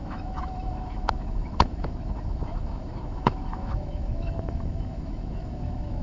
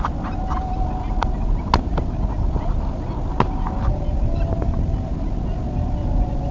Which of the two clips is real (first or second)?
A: second